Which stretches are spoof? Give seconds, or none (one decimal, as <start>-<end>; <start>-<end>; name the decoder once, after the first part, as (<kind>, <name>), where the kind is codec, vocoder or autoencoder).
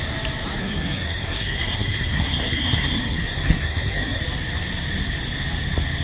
0.6-4.2 (codec, SNAC)